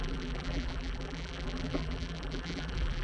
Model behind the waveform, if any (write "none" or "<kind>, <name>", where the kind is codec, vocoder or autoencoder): vocoder, BigVGAN v2